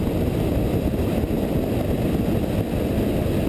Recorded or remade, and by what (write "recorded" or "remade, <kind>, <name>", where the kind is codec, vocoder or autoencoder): recorded